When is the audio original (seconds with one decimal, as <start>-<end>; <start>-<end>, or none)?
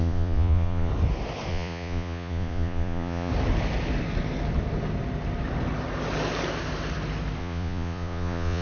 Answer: 0.9-1.5; 3.3-7.4